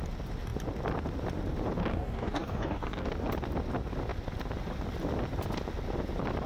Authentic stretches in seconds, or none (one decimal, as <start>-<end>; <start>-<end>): 0.0-1.8; 3.1-6.5